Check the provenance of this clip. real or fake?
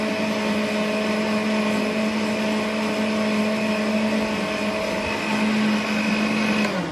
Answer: real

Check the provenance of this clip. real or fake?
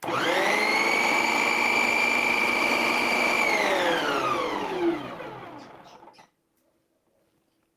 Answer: real